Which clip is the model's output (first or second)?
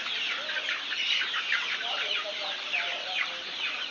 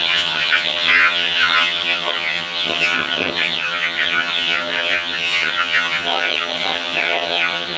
second